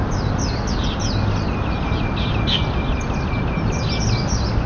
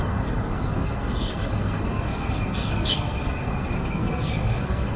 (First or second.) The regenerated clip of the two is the second